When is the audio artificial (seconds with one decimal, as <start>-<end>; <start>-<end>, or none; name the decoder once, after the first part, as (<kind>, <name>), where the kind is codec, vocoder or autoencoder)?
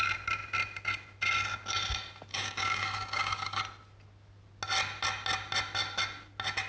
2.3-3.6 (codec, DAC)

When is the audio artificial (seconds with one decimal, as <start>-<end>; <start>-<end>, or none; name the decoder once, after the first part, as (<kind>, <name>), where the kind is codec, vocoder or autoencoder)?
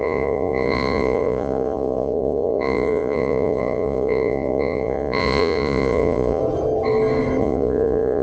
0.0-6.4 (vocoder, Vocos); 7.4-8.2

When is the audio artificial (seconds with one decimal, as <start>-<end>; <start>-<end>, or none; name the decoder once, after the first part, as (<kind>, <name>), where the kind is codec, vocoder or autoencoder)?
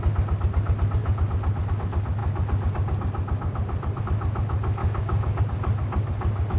4.8-5.4 (codec, DAC)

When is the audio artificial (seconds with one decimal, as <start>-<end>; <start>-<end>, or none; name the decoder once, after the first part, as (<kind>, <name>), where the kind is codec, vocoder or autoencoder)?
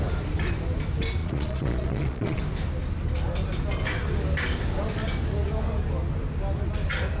1.2-2.4 (vocoder, Vocos)